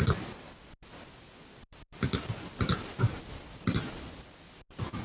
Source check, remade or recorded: recorded